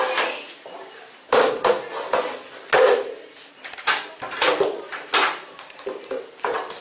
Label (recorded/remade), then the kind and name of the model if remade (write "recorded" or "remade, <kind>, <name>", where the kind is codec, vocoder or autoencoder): recorded